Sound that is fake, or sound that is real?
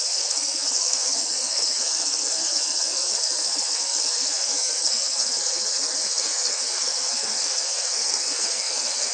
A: fake